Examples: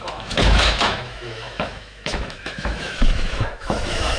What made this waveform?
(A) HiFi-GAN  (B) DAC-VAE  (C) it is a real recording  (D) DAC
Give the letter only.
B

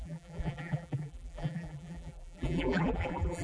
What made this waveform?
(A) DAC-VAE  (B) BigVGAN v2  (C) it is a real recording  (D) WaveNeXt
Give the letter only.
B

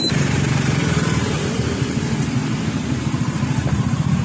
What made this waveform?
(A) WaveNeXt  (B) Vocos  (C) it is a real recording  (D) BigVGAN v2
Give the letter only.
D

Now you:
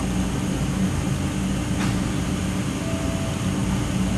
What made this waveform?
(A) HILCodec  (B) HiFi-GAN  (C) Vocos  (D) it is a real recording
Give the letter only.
D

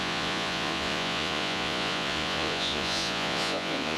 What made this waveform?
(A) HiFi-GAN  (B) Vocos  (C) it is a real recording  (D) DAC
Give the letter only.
B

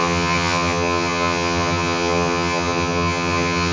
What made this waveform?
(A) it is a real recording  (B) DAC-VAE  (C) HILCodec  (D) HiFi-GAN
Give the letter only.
D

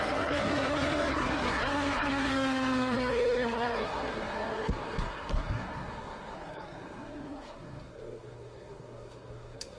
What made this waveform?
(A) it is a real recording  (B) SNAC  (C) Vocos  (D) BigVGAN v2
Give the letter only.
B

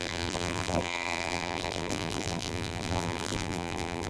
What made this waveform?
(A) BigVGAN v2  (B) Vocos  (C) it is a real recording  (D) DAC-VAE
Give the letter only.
A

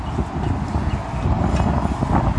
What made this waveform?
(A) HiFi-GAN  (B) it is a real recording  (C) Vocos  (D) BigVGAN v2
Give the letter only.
B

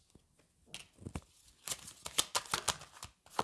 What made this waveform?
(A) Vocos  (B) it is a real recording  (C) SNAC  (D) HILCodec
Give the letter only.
B